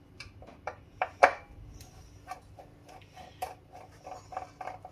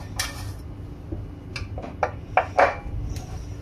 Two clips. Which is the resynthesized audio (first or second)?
first